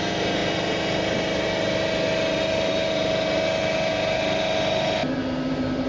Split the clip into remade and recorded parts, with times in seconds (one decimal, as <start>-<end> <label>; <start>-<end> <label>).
0.0-5.9 recorded